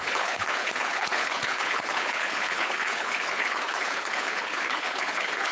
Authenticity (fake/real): fake